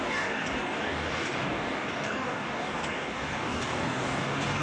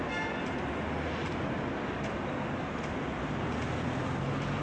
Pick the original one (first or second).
second